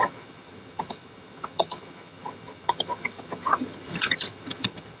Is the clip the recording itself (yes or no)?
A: no